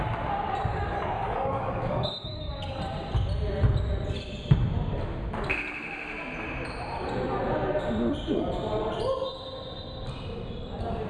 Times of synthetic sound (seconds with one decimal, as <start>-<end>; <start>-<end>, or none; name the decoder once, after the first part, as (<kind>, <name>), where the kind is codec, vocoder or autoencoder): 0.7-2.8 (codec, DAC)